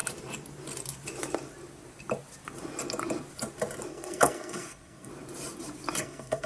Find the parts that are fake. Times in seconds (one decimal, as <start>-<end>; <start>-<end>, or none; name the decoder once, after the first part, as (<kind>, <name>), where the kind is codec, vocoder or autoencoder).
3.9-5.1 (codec, SNAC); 6.0-6.5